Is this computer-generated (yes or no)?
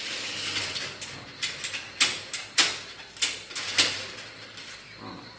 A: no